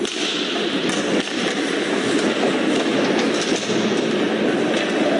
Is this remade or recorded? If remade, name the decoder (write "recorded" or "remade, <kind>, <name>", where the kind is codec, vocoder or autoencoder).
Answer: recorded